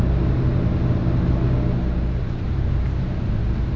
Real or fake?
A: real